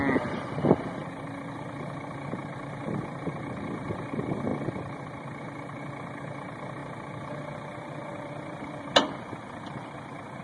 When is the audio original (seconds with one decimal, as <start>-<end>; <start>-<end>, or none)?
0.0-10.4